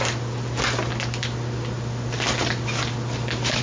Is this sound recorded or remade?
recorded